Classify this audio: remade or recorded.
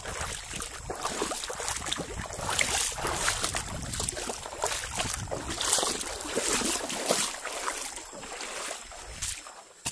recorded